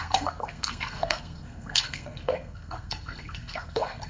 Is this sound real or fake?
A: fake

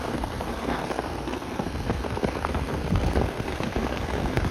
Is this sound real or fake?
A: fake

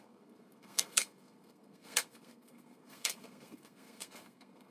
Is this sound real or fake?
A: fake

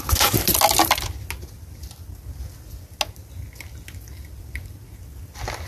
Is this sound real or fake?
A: real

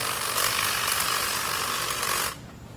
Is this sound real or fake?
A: real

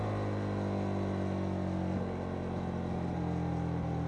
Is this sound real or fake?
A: real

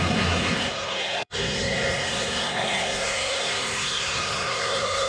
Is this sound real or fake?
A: fake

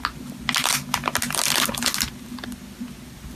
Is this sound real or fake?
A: real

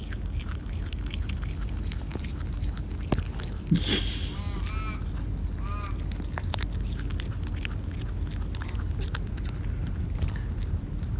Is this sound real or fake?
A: real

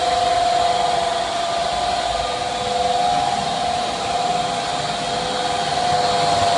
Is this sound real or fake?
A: real